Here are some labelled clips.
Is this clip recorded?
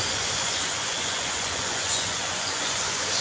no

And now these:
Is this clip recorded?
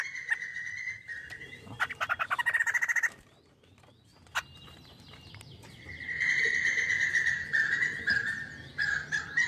yes